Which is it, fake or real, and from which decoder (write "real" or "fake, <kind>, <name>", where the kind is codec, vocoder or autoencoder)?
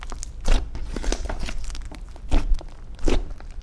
real